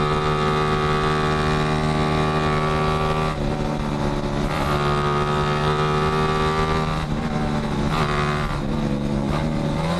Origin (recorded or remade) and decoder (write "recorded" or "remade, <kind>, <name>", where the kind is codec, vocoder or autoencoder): recorded